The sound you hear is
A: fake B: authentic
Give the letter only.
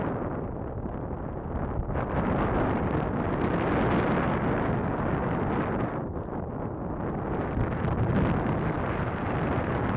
B